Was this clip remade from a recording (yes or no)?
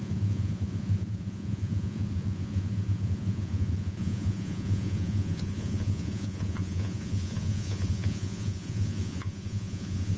yes